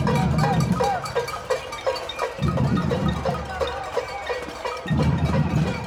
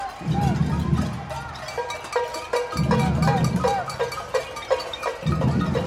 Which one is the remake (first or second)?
first